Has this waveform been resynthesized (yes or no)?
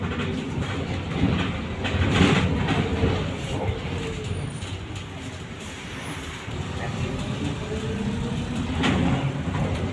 no